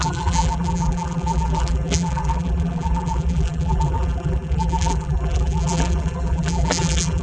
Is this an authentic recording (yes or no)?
no